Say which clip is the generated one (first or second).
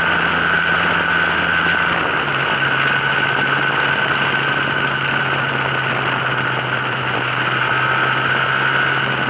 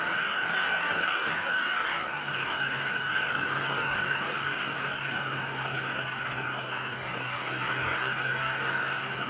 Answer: second